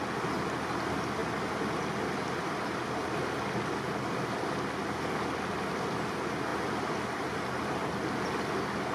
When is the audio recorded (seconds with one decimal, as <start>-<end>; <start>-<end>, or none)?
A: 0.0-8.9